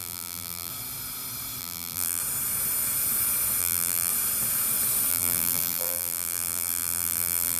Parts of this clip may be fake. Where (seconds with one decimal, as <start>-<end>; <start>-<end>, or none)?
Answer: 0.0-0.7; 1.6-2.2; 3.6-4.1; 5.1-7.6

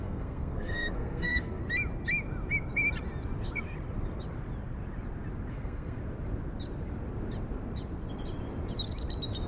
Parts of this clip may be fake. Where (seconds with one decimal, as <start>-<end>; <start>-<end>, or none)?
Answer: 0.0-1.6; 5.5-6.0

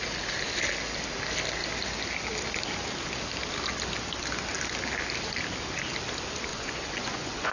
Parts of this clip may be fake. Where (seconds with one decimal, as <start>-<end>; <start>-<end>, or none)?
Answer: 6.5-7.5

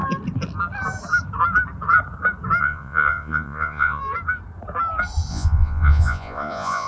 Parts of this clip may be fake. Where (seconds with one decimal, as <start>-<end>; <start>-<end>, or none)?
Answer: 2.6-4.0; 5.3-6.9

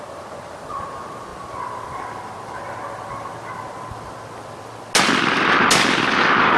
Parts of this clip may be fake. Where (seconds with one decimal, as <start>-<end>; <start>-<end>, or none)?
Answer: none